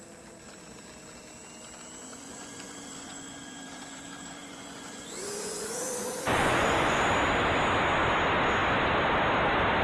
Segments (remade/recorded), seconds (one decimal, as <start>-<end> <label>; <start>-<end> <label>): 0.0-2.1 recorded; 2.1-7.0 remade; 7.0-9.8 recorded